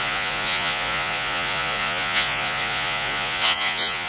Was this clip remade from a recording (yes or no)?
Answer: yes